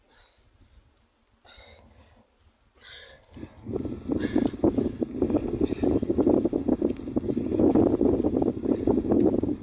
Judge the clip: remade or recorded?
recorded